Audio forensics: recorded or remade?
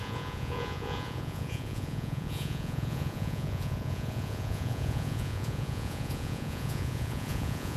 remade